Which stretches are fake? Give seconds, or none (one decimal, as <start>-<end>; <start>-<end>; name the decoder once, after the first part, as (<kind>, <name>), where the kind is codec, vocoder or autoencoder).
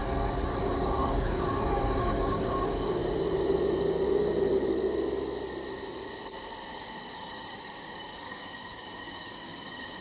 0.6-3.0 (codec, DAC); 6.7-10.0